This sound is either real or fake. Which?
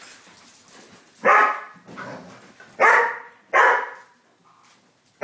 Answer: real